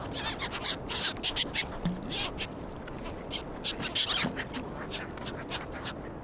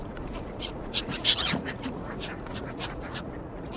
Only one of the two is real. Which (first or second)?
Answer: first